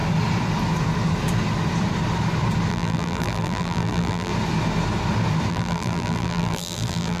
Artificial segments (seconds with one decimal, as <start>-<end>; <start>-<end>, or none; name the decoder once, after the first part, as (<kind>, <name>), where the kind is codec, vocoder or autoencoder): 2.7-4.3 (vocoder, BigVGAN v2); 5.5-7.2